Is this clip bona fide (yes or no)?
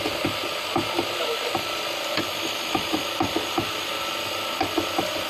yes